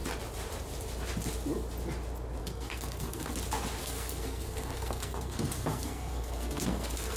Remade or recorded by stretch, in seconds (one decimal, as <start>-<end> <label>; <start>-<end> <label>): 0.0-2.4 recorded; 2.4-3.3 remade; 3.3-3.8 recorded; 3.8-7.2 remade